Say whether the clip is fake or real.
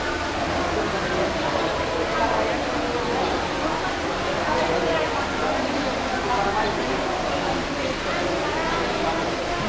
real